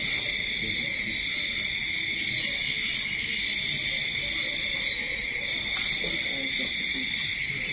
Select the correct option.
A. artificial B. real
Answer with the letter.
B